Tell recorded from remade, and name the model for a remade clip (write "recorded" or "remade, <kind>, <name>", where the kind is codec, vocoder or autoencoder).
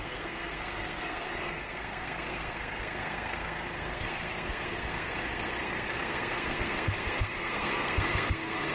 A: remade, codec, SNAC